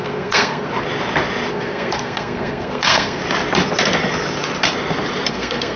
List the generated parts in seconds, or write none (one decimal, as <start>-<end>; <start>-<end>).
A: 0.0-0.7; 1.5-3.2; 5.3-5.8